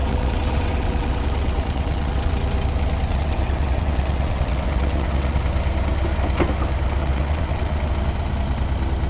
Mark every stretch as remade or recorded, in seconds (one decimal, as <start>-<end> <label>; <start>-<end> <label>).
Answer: 0.0-2.3 remade; 2.3-3.1 recorded; 3.1-5.4 remade; 5.4-7.0 recorded; 7.0-7.9 remade; 7.9-9.1 recorded